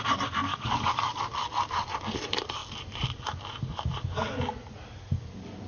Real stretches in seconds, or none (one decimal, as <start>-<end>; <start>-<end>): 0.0-0.5; 1.2-5.7